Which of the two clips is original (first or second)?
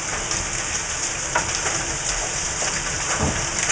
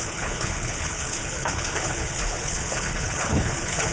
first